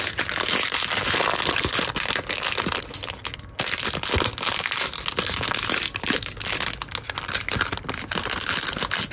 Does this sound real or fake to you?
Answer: real